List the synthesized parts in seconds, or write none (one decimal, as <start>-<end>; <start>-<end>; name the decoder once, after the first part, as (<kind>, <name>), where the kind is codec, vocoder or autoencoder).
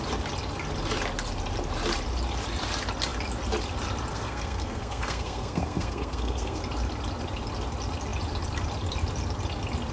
4.1-6.6 (codec, SNAC)